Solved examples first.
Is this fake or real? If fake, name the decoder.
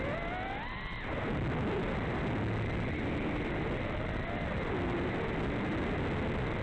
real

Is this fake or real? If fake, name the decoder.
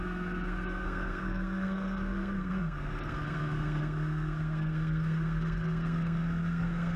fake, codec, SNAC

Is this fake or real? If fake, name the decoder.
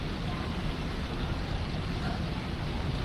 real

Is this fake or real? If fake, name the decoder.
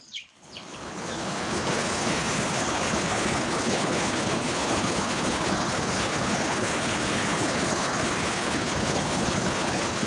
fake, codec, HILCodec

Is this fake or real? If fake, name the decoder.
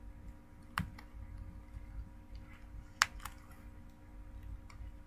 real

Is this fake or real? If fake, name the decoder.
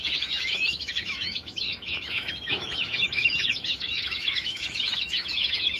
fake, autoencoder, DAC-VAE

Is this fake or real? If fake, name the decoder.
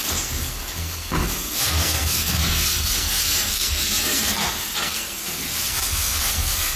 fake, codec, SNAC